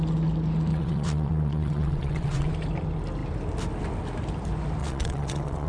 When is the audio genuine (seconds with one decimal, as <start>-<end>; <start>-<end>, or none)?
0.0-0.7; 2.5-4.8